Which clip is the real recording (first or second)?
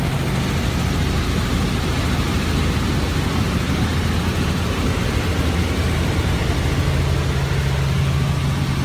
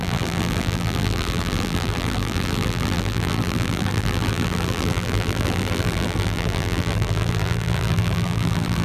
first